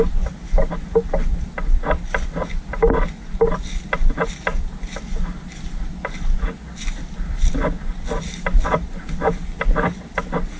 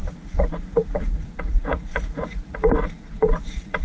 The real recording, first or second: first